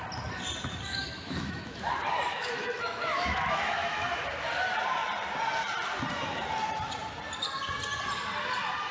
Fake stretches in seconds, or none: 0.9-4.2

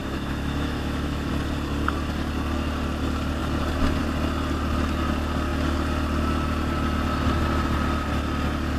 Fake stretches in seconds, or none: 0.0-1.3

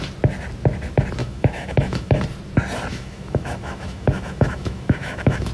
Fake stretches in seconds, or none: 1.2-2.2; 2.9-5.5

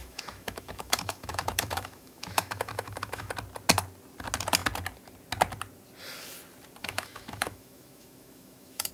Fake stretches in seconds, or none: 0.0-3.3; 6.8-8.9

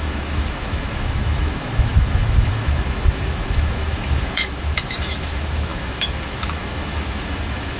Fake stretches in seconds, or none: 0.0-7.8

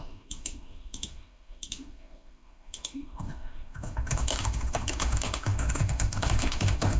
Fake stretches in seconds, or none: 0.0-7.0